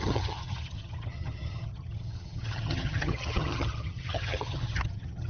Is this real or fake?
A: fake